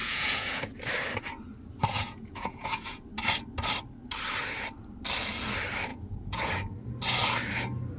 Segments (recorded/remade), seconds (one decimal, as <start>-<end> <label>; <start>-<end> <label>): 0.0-0.6 remade; 0.6-1.9 recorded; 1.9-3.0 remade; 3.0-5.9 recorded; 5.9-6.5 remade; 6.5-8.0 recorded